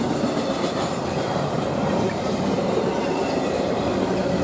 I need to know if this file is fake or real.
fake